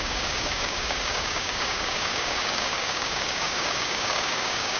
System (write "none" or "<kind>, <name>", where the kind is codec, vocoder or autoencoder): codec, DAC